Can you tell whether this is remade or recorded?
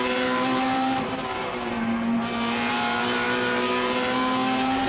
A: remade